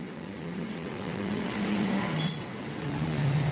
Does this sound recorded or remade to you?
remade